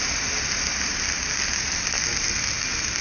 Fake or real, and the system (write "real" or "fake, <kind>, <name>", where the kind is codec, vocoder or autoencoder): real